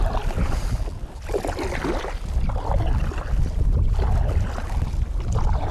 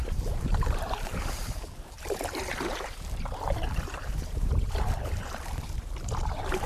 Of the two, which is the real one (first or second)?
first